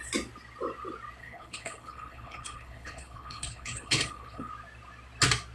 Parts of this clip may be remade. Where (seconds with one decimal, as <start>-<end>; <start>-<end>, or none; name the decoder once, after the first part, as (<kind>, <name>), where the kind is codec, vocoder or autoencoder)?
1.2-4.5 (codec, HILCodec)